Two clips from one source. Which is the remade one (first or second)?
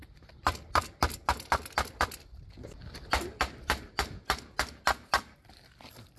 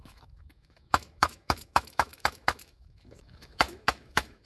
second